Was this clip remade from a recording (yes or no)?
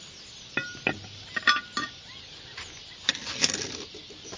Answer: no